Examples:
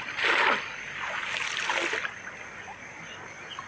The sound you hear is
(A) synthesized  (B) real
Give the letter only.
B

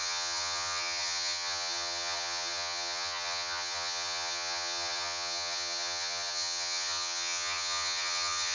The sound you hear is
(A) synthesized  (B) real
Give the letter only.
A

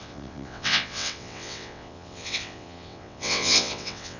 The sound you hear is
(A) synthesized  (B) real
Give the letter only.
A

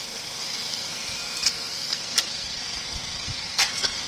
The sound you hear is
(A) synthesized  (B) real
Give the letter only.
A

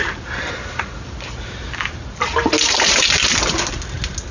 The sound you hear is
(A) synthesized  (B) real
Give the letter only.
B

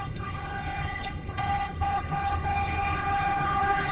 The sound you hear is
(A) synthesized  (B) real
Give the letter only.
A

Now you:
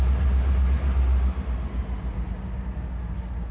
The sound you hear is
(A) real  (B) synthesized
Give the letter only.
A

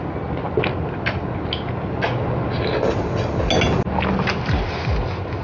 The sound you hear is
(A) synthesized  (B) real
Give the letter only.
B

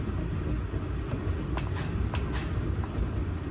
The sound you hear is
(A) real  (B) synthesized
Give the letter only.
A